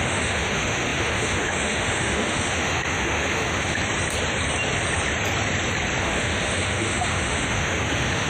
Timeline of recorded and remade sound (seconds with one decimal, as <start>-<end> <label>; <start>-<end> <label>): 0.0-3.8 remade; 3.8-6.0 recorded; 6.0-8.3 remade